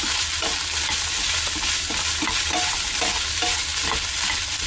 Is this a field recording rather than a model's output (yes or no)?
yes